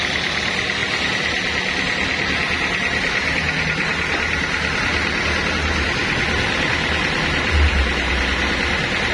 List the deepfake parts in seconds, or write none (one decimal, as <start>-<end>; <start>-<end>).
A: none